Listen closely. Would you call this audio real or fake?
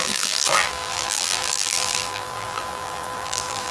fake